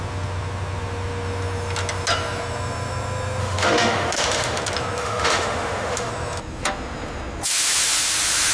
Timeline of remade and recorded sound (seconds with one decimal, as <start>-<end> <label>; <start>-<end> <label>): 0.0-3.4 recorded; 3.4-4.6 remade; 4.6-5.0 recorded; 5.0-6.1 remade; 6.1-8.5 recorded